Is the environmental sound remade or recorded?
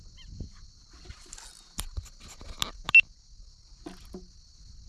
recorded